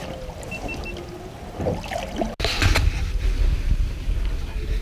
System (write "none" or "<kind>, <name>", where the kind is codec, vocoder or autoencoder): none